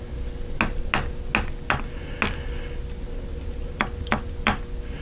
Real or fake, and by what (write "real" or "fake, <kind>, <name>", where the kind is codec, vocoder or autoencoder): real